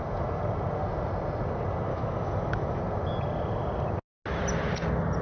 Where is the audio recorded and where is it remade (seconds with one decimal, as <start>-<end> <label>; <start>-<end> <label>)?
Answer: 0.0-1.9 recorded; 1.9-2.8 remade; 2.8-5.2 recorded